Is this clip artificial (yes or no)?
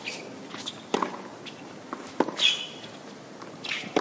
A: no